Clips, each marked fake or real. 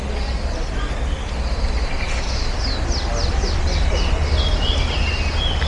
real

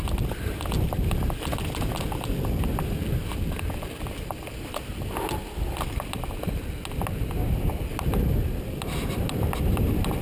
real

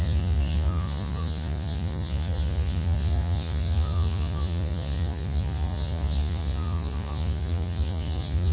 fake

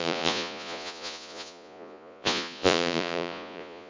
fake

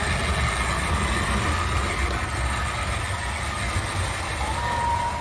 real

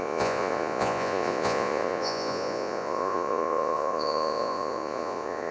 fake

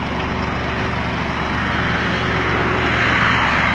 real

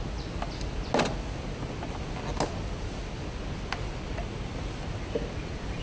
real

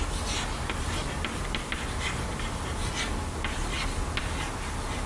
real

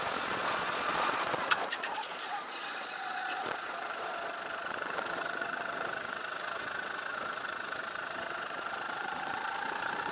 fake